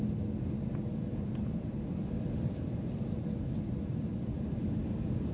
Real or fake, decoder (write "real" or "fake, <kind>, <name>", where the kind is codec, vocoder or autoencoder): real